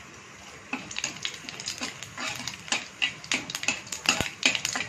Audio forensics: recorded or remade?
recorded